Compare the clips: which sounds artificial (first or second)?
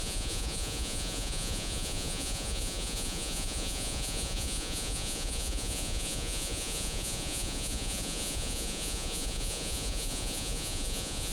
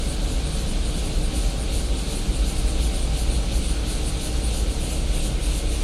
first